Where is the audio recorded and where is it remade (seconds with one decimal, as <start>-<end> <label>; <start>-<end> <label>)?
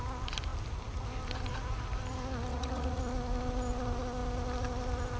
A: 0.0-2.5 recorded; 2.5-3.0 remade; 3.0-5.2 recorded